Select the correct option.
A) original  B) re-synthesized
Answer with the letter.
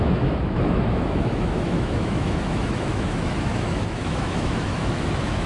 B